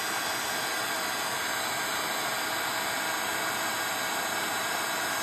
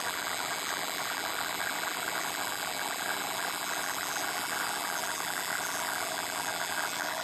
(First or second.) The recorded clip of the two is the first